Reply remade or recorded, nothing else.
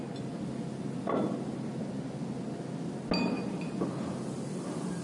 recorded